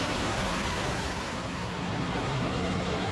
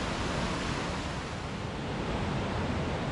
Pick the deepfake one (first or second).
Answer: first